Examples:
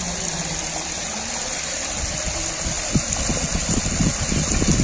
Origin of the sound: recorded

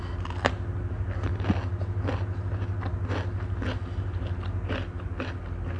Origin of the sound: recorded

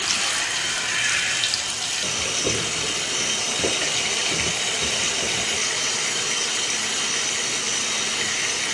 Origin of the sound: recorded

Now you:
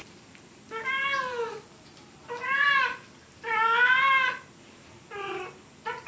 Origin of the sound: recorded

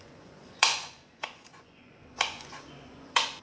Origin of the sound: remade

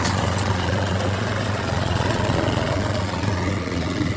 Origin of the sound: remade